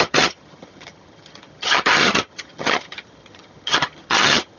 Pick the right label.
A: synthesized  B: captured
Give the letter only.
A